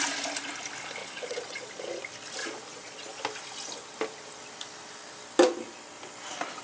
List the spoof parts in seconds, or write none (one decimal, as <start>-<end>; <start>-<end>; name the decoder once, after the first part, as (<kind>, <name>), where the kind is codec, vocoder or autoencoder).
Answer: 1.0-2.0 (vocoder, Vocos); 2.4-3.2